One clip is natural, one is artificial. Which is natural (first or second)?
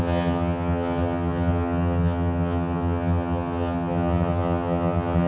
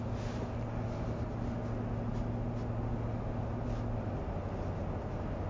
second